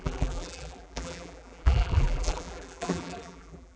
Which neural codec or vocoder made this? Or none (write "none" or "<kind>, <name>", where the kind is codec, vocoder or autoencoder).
vocoder, BigVGAN v2